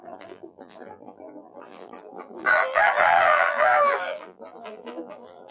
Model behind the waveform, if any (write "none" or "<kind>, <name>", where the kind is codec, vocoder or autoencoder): vocoder, BigVGAN v2